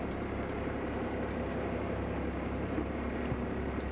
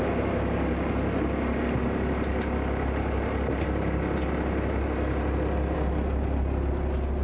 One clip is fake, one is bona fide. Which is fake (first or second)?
first